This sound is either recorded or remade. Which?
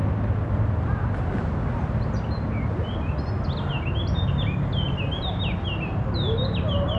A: recorded